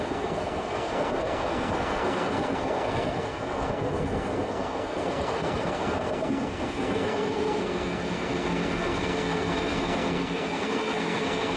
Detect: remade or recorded remade